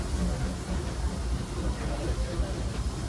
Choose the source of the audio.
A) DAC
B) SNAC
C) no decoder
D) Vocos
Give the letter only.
C